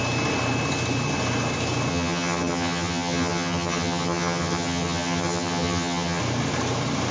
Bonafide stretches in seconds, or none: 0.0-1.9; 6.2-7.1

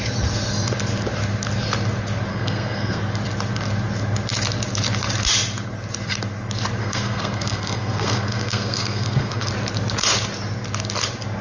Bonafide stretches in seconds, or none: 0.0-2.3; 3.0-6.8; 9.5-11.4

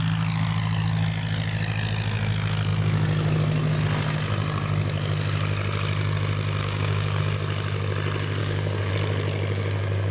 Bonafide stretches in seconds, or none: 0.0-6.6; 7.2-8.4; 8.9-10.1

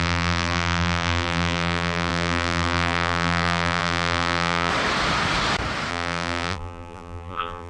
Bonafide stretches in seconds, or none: 4.7-5.9

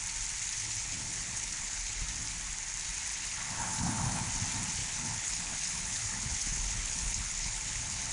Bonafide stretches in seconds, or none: 0.0-0.6; 2.0-3.1; 4.3-4.8

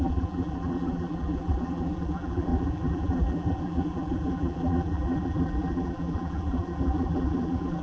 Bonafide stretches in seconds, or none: none

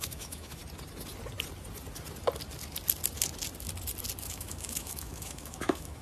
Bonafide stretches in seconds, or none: 0.6-4.2

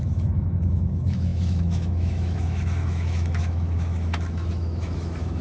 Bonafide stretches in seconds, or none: none